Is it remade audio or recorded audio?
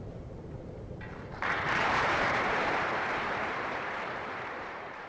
remade